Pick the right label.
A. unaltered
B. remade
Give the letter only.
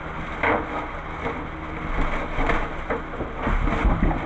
A